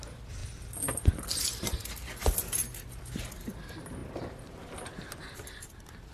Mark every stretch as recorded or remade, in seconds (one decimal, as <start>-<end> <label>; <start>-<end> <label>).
0.0-6.1 recorded